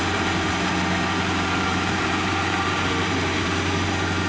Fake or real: fake